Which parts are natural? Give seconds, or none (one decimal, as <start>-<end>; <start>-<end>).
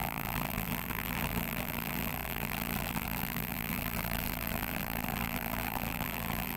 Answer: none